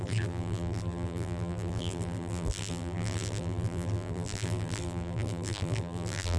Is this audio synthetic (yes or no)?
yes